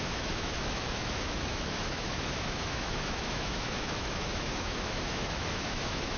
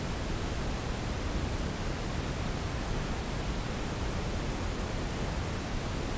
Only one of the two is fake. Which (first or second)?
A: first